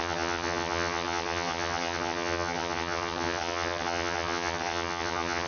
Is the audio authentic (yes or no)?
no